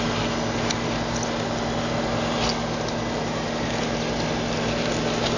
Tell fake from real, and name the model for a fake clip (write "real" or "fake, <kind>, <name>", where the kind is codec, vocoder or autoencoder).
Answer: real